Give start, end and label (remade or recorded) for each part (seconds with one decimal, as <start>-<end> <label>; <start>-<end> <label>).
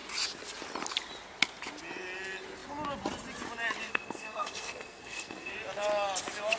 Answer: 0.0-3.9 recorded; 3.9-5.5 remade; 5.5-6.6 recorded